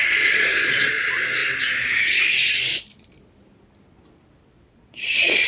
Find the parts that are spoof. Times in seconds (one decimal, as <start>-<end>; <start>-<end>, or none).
0.0-1.4; 4.7-5.5